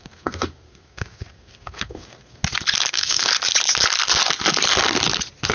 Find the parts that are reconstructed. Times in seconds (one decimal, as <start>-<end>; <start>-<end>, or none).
0.0-2.4; 2.9-3.3